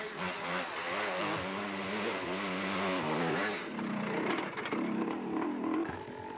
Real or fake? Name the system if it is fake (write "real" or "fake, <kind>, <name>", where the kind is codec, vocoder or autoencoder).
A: real